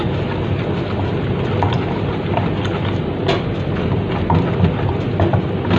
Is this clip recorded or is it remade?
recorded